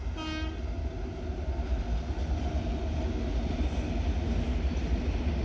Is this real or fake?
real